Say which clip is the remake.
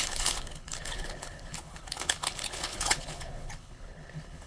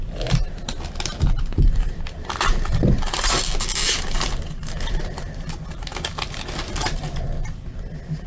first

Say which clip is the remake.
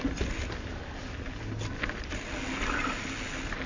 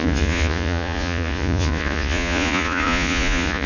second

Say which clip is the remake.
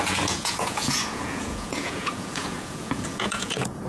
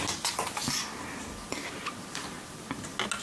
first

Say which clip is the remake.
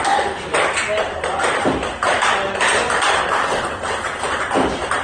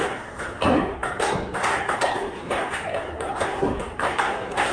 second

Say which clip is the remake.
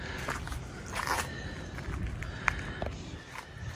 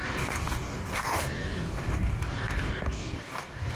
second